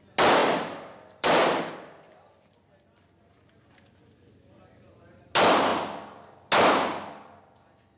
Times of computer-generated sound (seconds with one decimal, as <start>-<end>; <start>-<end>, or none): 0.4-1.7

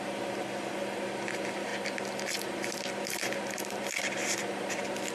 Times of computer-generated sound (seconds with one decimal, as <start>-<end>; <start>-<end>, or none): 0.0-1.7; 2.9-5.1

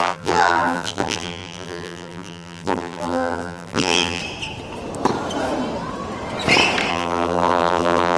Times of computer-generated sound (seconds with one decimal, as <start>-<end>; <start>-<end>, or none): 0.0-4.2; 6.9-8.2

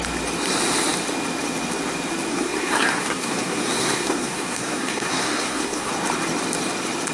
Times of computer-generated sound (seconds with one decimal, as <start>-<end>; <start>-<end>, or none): 2.3-5.9